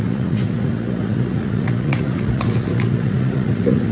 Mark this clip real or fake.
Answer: fake